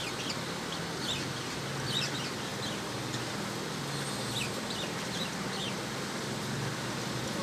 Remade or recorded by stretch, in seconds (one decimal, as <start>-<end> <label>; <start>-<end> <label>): 0.0-7.4 recorded